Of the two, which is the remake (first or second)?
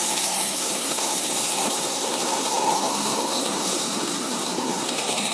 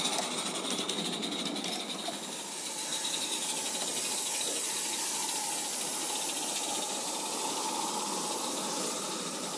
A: first